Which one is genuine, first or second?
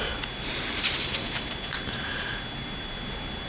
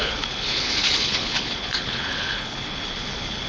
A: first